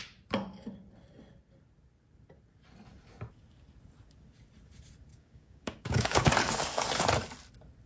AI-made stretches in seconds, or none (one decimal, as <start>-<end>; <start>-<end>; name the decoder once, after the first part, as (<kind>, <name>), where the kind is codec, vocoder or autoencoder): 5.1-6.3 (codec, DAC)